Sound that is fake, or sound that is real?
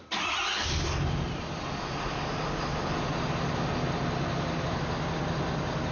real